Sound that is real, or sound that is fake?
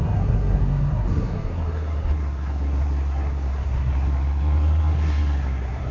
fake